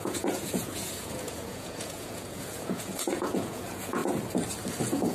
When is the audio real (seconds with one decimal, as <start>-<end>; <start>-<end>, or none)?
4.0-5.1